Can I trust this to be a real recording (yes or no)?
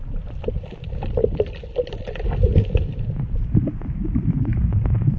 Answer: yes